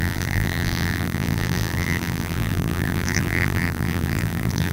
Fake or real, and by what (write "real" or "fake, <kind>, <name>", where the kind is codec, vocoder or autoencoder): fake, vocoder, BigVGAN v2